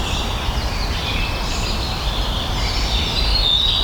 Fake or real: real